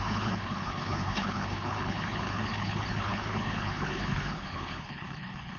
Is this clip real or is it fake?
fake